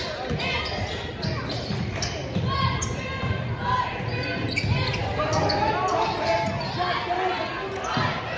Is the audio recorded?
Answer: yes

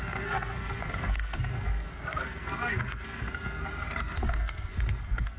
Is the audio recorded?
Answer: no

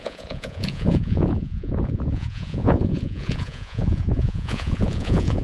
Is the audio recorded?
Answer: no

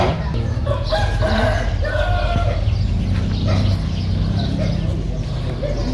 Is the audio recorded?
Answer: yes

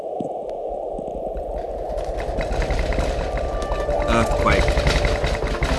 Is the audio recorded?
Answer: yes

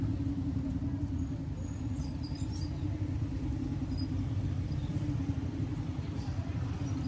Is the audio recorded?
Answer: no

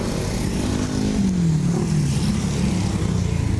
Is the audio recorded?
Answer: yes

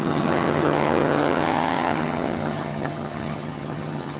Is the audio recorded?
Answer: no